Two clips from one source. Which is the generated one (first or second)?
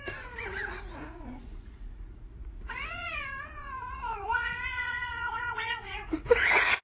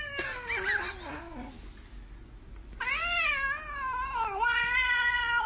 first